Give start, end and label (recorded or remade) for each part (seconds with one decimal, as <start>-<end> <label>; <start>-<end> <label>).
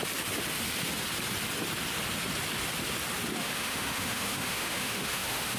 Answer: 0.0-3.4 recorded; 3.4-5.6 remade